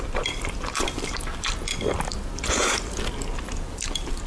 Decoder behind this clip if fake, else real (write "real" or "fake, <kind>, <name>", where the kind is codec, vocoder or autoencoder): real